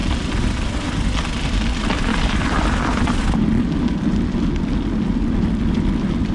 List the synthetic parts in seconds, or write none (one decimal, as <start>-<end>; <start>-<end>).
none